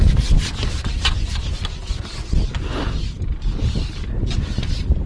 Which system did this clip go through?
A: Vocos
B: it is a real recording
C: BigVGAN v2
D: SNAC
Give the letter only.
B